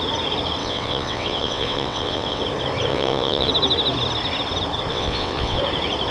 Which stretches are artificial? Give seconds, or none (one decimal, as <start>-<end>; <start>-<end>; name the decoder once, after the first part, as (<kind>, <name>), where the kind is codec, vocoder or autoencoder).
0.6-2.4 (vocoder, WaveNeXt); 2.9-3.5; 4.9-5.6